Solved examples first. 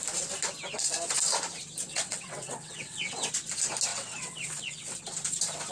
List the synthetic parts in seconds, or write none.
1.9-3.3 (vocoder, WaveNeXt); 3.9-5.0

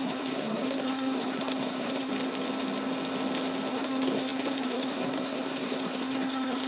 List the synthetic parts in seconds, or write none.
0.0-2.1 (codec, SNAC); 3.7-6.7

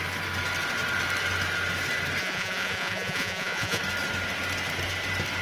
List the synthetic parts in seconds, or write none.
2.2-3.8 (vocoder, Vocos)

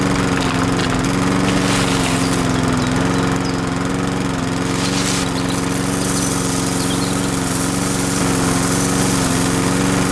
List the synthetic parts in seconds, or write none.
none

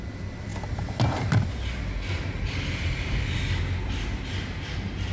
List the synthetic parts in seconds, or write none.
none

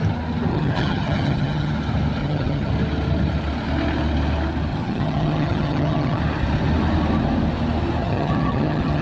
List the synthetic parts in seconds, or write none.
0.5-1.7 (vocoder, HiFi-GAN); 2.2-2.7; 4.7-6.2; 8.0-9.0

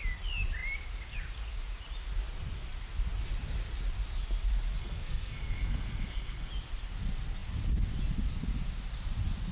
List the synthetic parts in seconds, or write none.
4.8-6.5 (codec, SNAC)

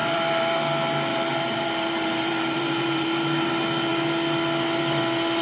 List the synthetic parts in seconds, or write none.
0.0-0.6 (vocoder, BigVGAN v2); 1.1-3.5